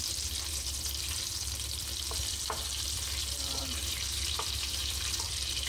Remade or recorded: remade